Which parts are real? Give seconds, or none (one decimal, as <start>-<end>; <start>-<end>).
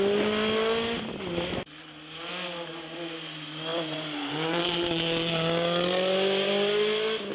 0.0-7.3